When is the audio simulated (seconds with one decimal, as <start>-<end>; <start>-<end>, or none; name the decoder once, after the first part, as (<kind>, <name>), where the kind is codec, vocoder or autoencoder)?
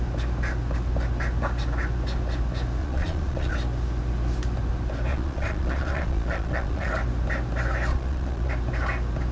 2.8-3.5 (vocoder, Vocos); 5.1-6.9; 7.9-8.5